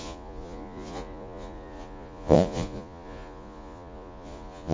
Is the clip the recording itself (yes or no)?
no